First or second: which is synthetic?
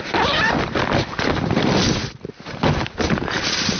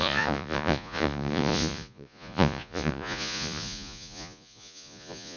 second